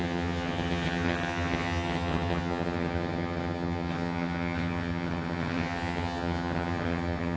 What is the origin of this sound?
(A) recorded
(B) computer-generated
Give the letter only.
B